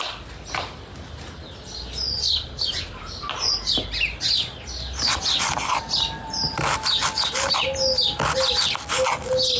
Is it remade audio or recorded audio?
recorded